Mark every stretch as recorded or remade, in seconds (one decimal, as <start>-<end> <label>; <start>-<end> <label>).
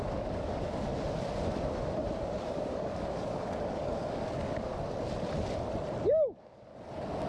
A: 0.0-0.9 remade; 0.9-2.2 recorded; 2.2-4.7 remade; 4.7-6.1 recorded; 6.1-6.7 remade; 6.7-7.3 recorded